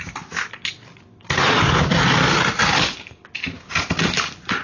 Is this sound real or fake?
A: real